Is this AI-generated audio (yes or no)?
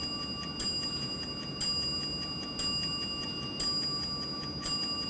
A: no